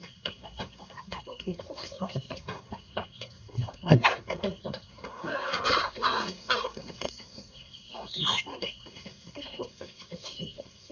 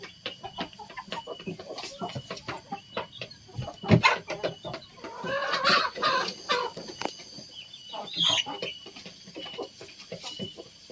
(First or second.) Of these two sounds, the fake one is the first